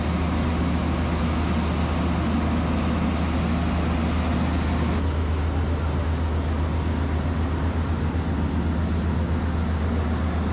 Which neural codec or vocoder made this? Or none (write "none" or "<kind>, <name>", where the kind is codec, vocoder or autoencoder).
none